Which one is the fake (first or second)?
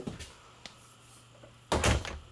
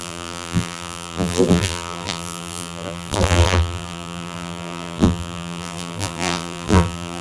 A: second